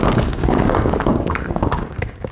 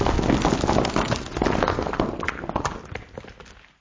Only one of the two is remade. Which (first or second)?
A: first